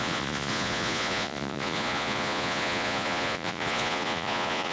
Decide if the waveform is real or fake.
fake